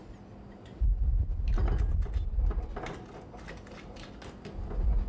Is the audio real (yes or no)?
yes